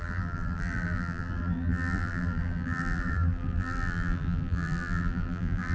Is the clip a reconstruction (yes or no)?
yes